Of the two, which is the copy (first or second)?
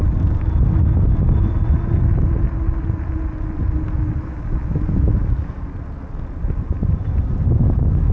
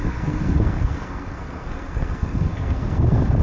second